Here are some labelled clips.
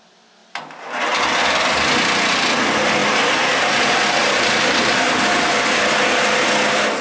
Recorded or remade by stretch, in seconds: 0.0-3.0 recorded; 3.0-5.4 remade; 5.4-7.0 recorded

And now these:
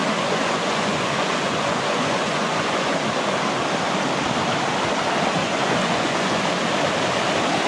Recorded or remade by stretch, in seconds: 0.0-3.0 remade; 3.0-5.4 recorded; 5.4-6.4 remade; 6.4-7.7 recorded

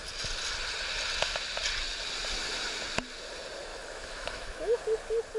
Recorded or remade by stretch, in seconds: 0.0-3.7 recorded; 3.7-4.8 remade; 4.8-5.4 recorded

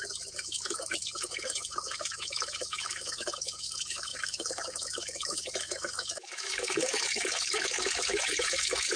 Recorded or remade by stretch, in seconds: 0.0-9.0 remade

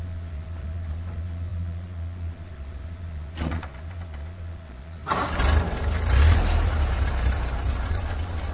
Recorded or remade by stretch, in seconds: 0.0-5.0 remade; 5.0-7.9 recorded; 7.9-8.5 remade